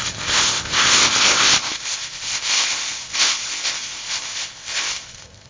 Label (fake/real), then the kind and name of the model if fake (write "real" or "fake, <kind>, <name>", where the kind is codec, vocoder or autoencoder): fake, codec, ZipCodec